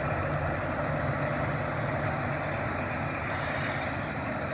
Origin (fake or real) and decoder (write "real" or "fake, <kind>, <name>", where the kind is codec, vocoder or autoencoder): real